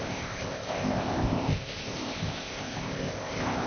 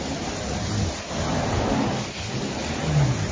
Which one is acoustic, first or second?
second